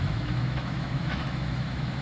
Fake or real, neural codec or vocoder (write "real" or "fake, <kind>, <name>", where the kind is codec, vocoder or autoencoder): fake, autoencoder, DAC-VAE